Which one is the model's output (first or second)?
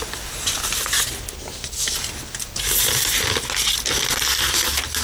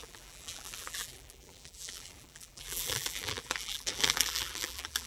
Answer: second